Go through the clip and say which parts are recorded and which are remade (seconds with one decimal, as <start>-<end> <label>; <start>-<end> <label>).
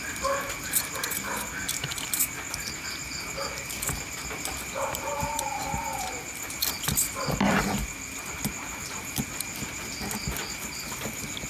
0.0-11.5 recorded